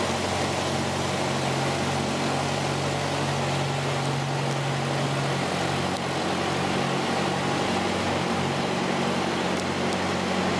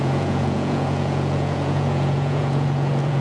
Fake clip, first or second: second